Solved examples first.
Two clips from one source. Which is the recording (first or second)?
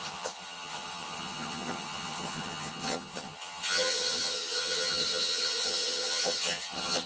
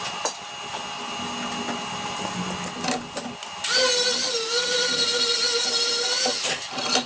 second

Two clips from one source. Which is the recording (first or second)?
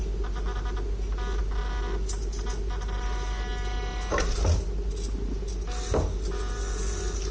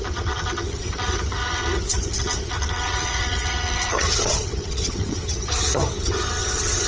first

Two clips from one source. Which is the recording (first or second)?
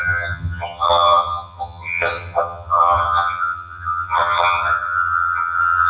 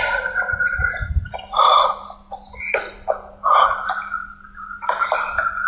second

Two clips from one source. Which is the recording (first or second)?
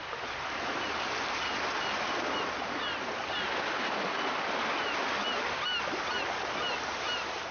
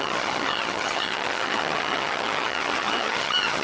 first